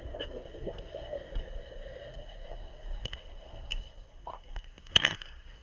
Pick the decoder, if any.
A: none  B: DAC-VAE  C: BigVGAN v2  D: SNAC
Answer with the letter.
D